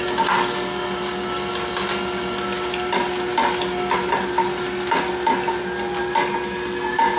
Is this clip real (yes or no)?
yes